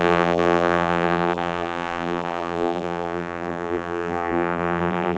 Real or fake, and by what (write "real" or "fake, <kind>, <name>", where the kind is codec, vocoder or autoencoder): fake, vocoder, BigVGAN v2